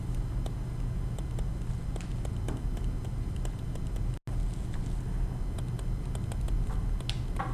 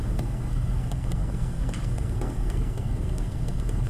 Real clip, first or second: first